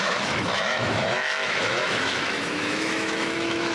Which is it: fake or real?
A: fake